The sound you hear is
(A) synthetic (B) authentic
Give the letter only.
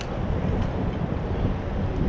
B